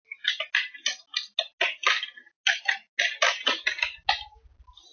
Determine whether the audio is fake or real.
real